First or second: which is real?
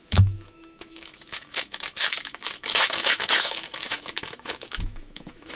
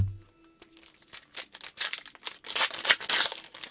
second